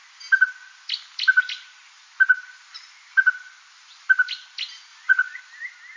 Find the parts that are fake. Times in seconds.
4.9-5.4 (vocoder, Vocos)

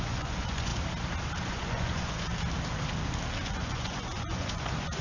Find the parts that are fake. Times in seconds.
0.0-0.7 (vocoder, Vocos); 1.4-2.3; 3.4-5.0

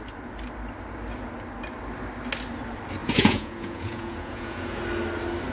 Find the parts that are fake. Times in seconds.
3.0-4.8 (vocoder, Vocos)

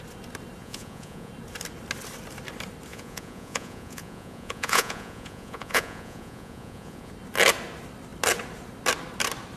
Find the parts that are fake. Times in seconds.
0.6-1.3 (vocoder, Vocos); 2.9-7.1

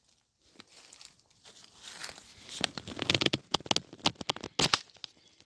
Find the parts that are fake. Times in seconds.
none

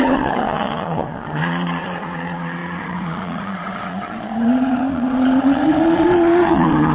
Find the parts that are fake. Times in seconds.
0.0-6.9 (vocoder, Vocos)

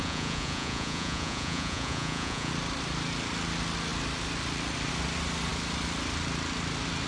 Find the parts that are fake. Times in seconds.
0.0-2.5 (vocoder, Vocos)

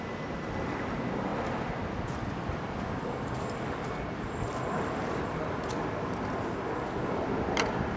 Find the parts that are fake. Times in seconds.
none